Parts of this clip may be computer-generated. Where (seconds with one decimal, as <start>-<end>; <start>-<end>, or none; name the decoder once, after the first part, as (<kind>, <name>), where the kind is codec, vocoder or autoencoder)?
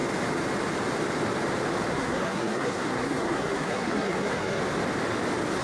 1.9-4.6 (codec, SNAC)